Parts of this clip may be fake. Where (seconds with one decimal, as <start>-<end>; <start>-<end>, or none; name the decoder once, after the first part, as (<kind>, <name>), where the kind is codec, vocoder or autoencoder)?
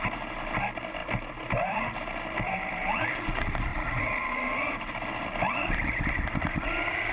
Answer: 1.0-3.0 (vocoder, BigVGAN v2); 3.7-7.1